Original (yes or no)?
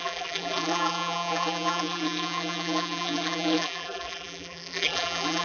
no